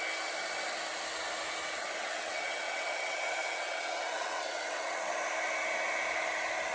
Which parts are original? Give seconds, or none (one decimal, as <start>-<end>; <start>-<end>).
0.0-2.0; 5.1-6.7